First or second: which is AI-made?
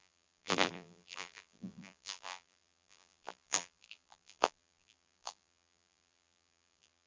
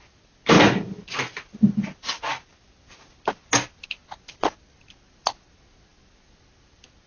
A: first